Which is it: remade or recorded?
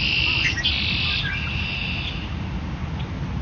recorded